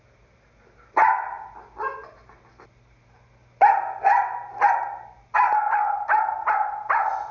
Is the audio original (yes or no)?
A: yes